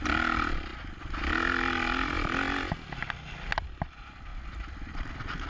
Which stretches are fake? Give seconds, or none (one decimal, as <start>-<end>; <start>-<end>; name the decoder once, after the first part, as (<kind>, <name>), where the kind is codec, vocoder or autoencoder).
none